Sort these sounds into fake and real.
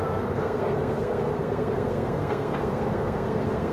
fake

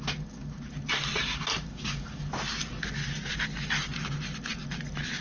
real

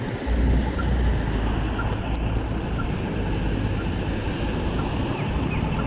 real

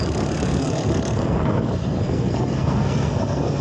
fake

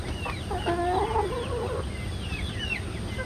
real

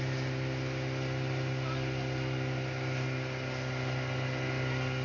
real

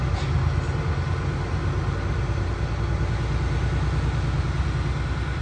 real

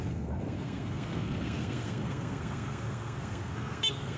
fake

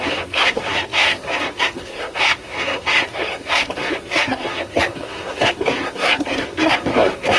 fake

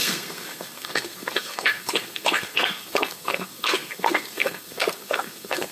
fake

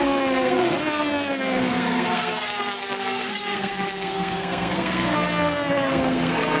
fake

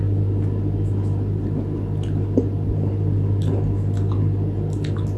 real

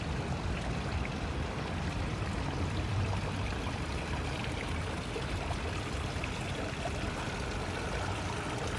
real